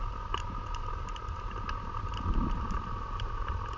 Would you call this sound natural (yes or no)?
yes